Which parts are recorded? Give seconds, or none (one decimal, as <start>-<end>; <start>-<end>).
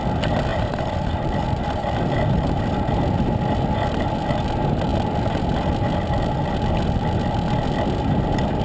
0.0-0.5; 2.6-8.6